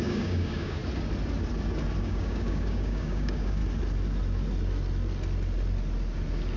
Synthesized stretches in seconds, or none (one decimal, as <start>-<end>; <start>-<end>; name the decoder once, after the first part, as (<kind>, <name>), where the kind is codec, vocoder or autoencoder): 0.0-0.8 (codec, DAC); 2.0-3.6